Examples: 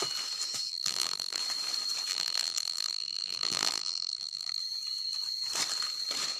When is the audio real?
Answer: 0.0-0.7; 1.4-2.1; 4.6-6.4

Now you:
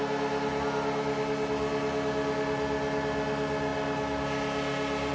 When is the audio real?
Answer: 0.0-5.1

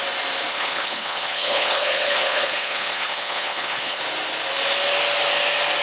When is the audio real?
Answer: 0.0-0.5; 4.0-5.8

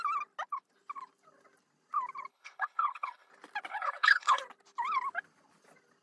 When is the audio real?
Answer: 0.0-2.3; 3.3-3.7; 4.4-6.0

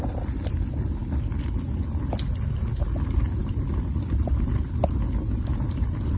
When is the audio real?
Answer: 0.0-3.4; 4.8-6.2